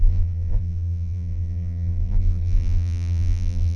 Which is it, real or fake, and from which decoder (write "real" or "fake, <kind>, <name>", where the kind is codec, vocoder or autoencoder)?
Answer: fake, vocoder, BigVGAN v2